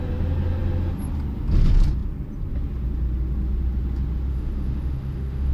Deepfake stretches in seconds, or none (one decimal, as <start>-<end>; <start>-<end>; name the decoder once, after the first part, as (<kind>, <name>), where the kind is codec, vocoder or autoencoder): 4.3-5.5 (autoencoder, DAC-VAE)